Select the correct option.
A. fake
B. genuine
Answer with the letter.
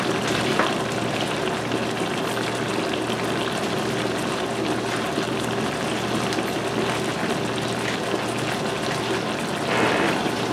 B